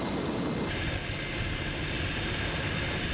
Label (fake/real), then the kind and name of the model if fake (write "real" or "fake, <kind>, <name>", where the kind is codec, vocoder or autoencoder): real